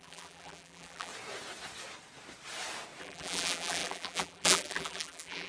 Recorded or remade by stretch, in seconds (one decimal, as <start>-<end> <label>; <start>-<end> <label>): 0.0-1.1 remade; 1.1-3.0 recorded; 3.0-5.5 remade